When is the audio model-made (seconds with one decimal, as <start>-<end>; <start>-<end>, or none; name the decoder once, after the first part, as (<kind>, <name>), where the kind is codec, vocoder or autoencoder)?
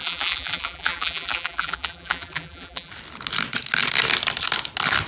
0.0-2.9 (vocoder, BigVGAN v2)